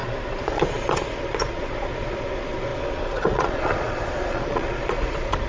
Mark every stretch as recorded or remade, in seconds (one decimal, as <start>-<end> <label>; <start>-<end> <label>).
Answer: 0.0-5.5 remade